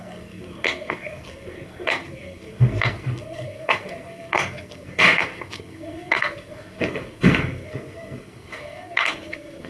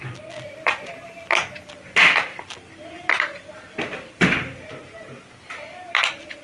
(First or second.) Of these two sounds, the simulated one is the first